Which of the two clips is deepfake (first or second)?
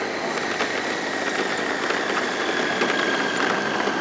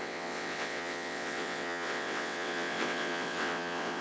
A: second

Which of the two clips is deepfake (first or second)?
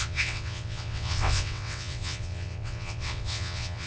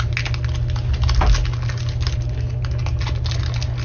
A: first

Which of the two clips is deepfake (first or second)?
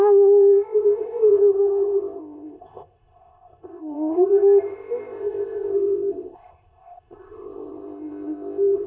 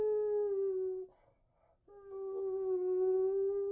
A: first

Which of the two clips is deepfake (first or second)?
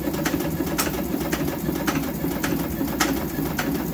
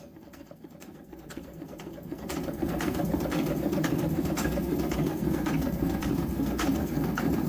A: second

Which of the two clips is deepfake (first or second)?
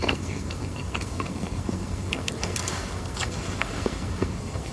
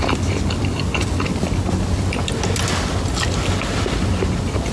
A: first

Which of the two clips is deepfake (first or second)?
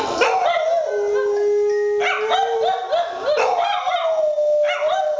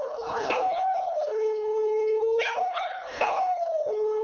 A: second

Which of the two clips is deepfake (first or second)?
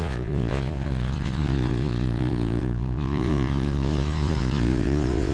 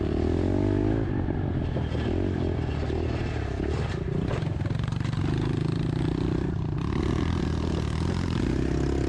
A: first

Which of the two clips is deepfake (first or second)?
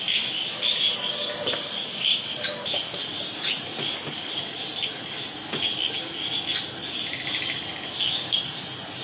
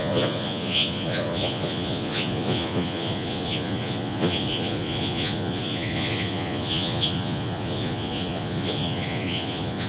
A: second